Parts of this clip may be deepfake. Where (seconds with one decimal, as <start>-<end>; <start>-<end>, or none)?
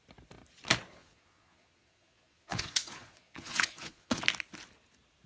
1.0-4.2